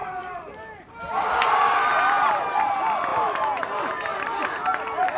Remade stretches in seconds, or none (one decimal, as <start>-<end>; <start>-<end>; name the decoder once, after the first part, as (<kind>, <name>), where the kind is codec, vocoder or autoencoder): none

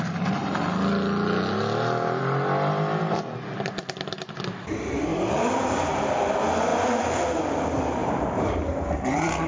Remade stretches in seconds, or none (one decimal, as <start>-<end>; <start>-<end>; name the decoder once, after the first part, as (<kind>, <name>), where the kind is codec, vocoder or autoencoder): 5.1-6.3 (vocoder, BigVGAN v2); 6.7-7.4; 8.0-9.5

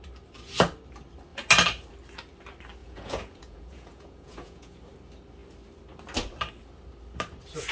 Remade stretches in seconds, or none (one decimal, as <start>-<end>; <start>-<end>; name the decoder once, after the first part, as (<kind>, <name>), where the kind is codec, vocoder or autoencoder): 2.8-4.8 (vocoder, Vocos)

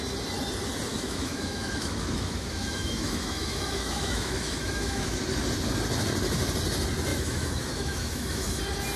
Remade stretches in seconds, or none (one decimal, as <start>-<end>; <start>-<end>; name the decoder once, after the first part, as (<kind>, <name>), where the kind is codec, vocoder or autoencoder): 0.9-5.2 (autoencoder, DAC-VAE); 7.1-8.6

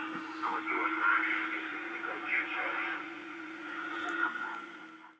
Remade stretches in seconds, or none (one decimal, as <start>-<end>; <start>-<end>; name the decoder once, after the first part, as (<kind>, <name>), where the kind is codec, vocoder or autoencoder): 1.7-4.8 (vocoder, Vocos)

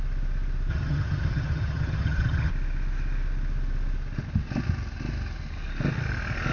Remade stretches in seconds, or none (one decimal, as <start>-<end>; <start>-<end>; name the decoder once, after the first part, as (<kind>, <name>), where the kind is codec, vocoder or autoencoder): 0.7-2.5 (vocoder, HiFi-GAN)